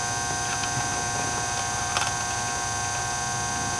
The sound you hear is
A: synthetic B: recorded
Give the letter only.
B